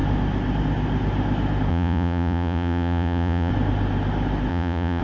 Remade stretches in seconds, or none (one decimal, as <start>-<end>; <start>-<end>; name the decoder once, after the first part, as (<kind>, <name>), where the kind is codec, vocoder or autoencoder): 1.7-3.5 (vocoder, Vocos); 4.5-5.0